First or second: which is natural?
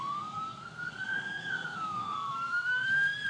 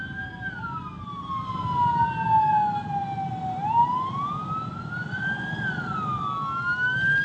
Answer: second